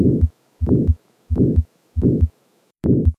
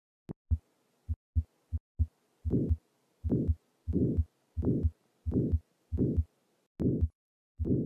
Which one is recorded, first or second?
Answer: second